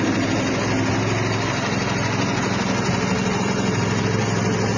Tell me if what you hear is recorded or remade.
recorded